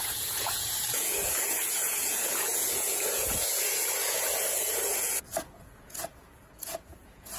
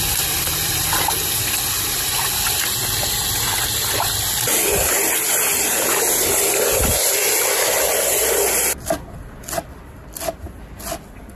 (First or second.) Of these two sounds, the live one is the second